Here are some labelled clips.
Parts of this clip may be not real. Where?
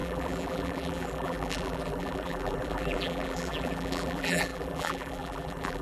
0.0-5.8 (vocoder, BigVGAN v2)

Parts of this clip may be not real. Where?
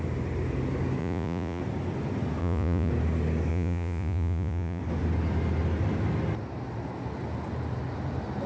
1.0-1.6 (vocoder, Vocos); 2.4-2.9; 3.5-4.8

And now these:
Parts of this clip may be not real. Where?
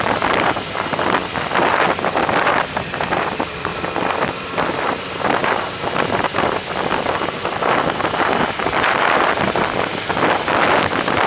none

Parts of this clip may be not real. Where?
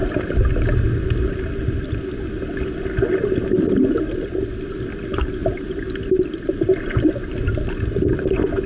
5.4-6.4 (vocoder, BigVGAN v2)